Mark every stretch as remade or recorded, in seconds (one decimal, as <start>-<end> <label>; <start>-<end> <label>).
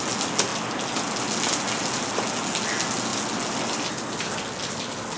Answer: 0.0-5.2 recorded